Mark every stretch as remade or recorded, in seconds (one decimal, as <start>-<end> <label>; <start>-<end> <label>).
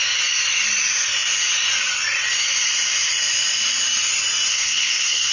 0.0-4.5 recorded; 4.5-5.3 remade